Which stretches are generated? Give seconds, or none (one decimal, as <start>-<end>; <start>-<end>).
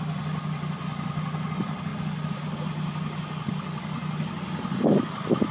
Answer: none